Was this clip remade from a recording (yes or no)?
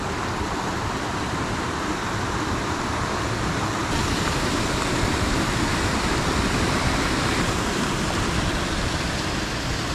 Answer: yes